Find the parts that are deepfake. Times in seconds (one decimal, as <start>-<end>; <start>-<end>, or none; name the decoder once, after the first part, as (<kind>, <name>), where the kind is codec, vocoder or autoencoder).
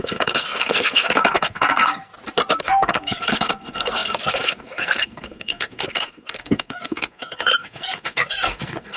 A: 0.0-2.1 (codec, SNAC); 2.6-9.0